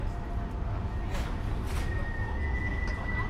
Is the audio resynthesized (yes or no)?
no